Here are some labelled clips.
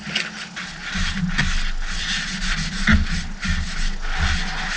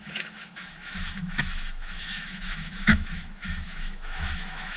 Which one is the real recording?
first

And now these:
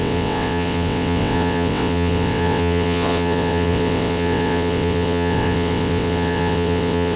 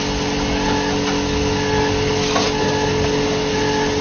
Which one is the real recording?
second